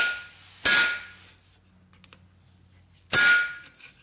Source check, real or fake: real